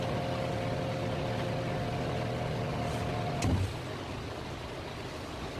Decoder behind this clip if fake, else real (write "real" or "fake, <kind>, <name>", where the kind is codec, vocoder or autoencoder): real